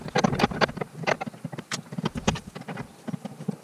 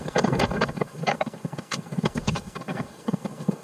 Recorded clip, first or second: first